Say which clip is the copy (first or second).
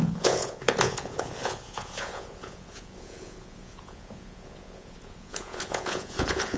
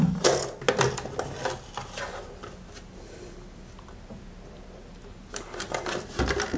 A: first